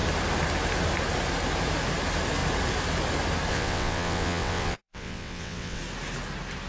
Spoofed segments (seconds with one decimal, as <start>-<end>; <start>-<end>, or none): 3.5-5.8

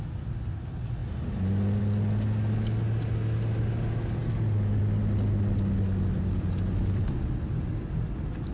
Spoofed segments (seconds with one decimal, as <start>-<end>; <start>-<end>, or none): none

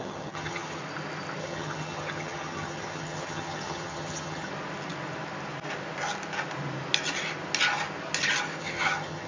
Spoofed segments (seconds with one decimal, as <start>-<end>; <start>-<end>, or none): 0.0-0.8; 1.4-4.5; 8.6-9.3